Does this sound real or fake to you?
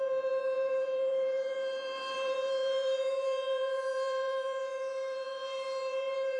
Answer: fake